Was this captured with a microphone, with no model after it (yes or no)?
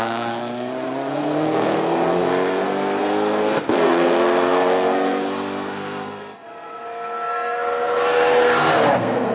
no